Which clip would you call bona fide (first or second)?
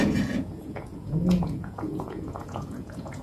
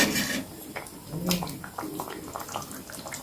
second